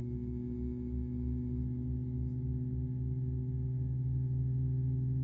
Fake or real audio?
real